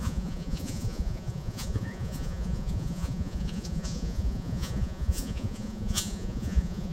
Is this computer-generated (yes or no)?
yes